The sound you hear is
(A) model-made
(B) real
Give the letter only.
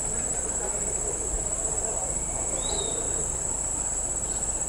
B